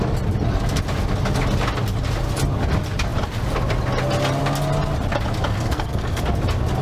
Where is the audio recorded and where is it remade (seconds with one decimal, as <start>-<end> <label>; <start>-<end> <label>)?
0.0-5.5 recorded; 5.5-6.2 remade; 6.2-6.8 recorded